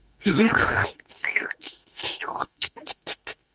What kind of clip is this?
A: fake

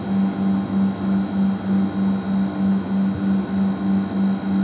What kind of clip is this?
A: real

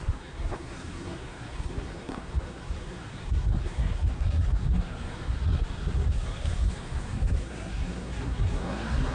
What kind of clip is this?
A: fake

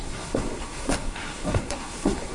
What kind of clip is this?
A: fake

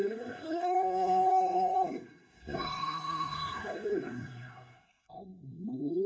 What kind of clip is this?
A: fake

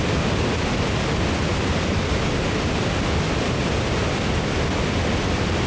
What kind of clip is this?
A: real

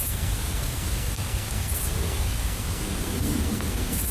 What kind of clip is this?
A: fake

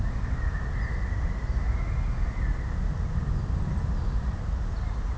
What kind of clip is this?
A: real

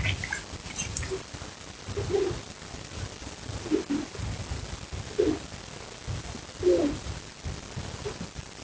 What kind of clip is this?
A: real